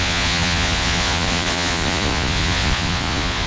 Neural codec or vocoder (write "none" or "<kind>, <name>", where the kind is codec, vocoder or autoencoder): vocoder, Vocos